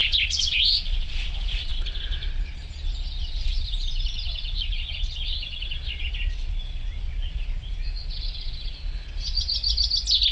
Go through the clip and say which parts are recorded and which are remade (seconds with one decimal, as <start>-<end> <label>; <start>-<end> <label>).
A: 0.0-9.5 remade; 9.5-10.3 recorded